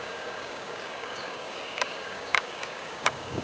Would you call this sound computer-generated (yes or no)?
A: yes